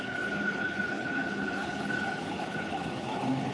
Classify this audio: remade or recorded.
remade